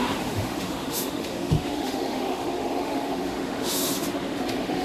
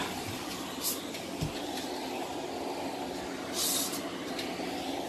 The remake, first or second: first